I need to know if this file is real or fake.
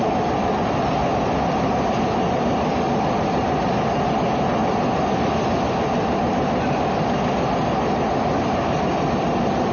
real